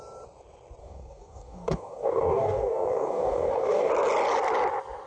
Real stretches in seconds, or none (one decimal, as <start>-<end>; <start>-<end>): 0.0-0.8; 3.9-5.1